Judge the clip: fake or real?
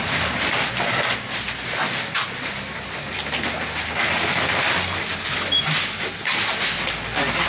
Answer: real